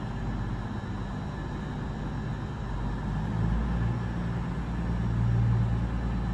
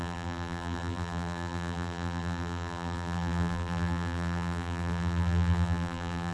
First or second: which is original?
first